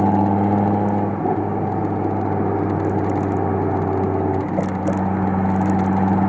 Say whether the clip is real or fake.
real